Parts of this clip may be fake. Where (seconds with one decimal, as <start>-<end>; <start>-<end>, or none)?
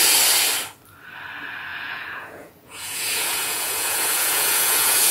1.7-5.1